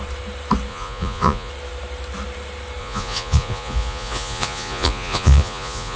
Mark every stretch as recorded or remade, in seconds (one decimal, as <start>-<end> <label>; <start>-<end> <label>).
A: 0.0-0.7 recorded; 0.7-1.5 remade; 1.5-2.8 recorded; 2.8-6.0 remade